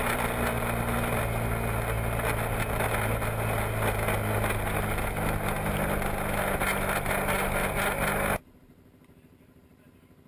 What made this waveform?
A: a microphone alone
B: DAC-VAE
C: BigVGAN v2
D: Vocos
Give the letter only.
A